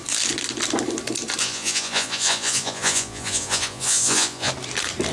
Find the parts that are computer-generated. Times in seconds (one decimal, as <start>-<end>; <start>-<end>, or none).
1.4-4.5